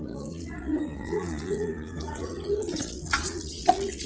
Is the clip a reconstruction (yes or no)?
yes